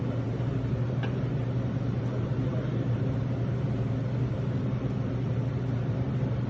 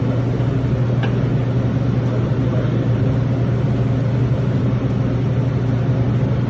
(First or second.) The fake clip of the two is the first